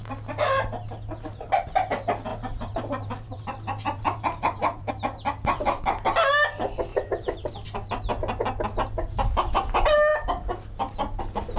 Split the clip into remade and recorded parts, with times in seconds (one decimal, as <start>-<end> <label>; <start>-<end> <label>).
0.0-2.3 recorded; 2.3-4.9 remade; 4.9-6.9 recorded; 6.9-7.5 remade; 7.5-8.7 recorded; 8.7-9.6 remade; 9.6-11.6 recorded

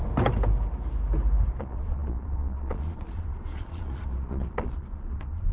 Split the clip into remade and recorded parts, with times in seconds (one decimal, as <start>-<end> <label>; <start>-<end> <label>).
0.0-1.6 recorded; 1.6-5.5 remade

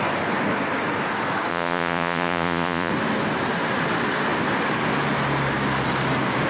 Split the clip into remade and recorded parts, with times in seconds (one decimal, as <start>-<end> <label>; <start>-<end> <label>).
0.0-1.5 recorded; 1.5-2.9 remade; 2.9-6.5 recorded

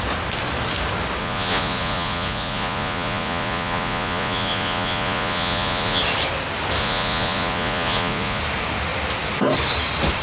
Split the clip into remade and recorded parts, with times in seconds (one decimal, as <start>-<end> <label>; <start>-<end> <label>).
0.0-1.2 recorded; 1.2-6.0 remade; 6.0-6.8 recorded; 6.8-8.4 remade; 8.4-10.2 recorded

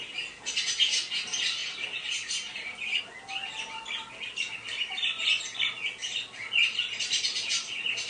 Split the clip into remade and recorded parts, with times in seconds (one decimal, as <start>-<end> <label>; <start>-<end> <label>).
0.0-8.1 recorded